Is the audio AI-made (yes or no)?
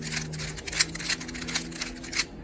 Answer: no